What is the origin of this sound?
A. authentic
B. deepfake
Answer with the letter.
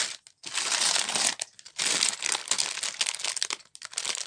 A